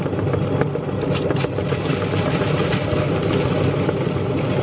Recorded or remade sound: recorded